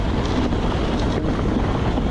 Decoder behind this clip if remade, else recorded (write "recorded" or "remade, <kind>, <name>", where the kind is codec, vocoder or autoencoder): recorded